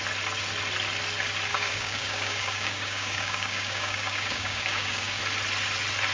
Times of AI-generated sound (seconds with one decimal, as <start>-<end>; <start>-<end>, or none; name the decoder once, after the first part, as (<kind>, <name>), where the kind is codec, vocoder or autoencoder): 1.5-5.2 (codec, DAC)